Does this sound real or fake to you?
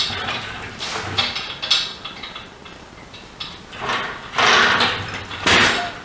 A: real